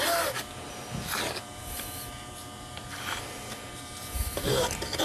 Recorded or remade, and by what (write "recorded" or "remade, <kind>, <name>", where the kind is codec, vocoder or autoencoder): remade, vocoder, BigVGAN v2